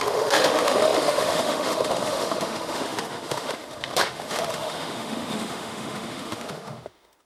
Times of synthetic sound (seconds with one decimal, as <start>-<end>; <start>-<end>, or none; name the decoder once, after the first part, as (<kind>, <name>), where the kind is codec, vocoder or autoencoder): 0.0-7.2 (autoencoder, DAC-VAE)